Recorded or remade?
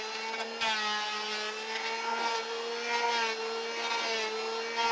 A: recorded